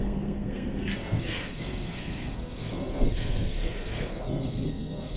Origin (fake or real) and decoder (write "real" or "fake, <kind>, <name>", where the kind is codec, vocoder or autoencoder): fake, codec, SNAC